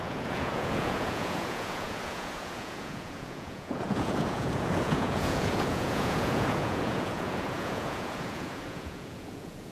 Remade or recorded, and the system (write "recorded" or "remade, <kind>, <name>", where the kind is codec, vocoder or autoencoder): remade, vocoder, Vocos